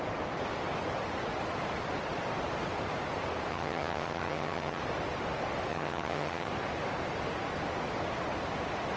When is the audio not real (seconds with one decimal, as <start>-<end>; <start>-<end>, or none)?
3.5-4.8; 5.7-6.5